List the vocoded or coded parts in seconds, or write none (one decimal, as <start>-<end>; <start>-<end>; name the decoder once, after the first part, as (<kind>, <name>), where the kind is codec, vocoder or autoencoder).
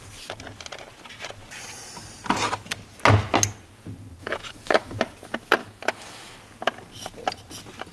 4.2-5.0 (autoencoder, DAC-VAE); 5.6-6.4